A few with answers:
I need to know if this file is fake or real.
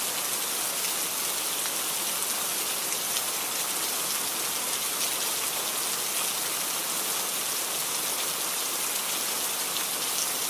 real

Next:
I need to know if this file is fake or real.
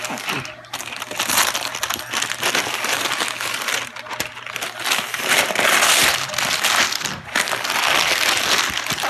real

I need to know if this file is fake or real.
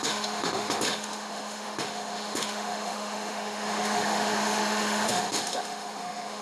fake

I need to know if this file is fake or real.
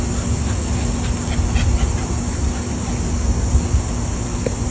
real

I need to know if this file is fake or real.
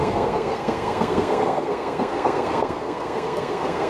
fake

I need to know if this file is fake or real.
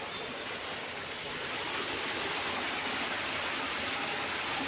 real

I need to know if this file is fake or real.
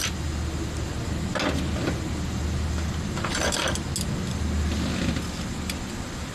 real